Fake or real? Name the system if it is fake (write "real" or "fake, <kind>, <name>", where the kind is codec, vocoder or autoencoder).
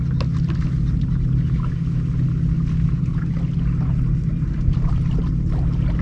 real